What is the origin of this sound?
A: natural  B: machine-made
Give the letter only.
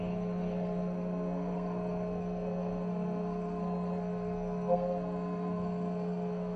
B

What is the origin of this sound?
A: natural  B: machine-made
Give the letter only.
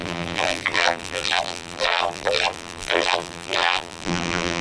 B